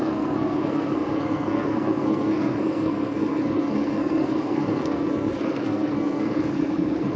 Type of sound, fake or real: fake